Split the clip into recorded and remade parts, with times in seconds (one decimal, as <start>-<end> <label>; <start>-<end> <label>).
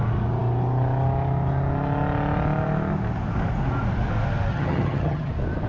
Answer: 0.0-4.5 recorded; 4.5-5.3 remade; 5.3-5.7 recorded